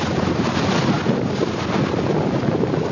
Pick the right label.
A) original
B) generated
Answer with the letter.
A